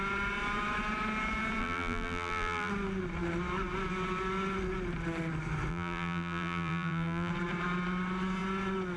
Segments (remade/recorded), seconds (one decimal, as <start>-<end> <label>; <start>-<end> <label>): 0.0-1.6 recorded; 1.6-2.7 remade; 2.7-5.7 recorded; 5.7-7.3 remade; 7.3-9.0 recorded